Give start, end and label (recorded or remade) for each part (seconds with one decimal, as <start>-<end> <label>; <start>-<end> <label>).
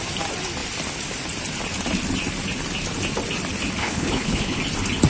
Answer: 0.0-3.8 recorded; 3.8-4.6 remade; 4.6-5.1 recorded